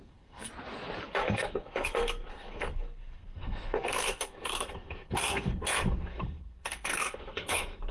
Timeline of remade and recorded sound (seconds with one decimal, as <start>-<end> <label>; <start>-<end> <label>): 0.0-0.5 remade; 0.5-1.2 recorded; 1.2-7.9 remade